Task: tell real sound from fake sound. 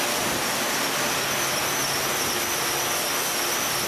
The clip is real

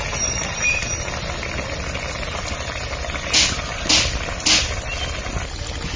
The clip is real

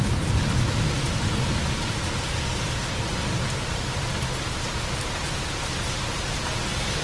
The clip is real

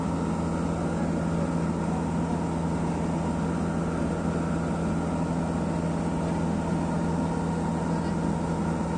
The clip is real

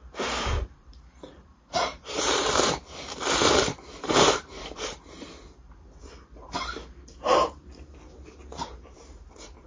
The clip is fake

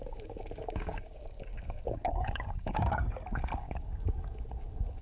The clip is fake